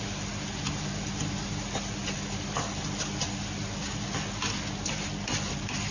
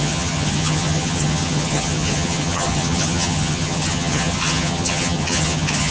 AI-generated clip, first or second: second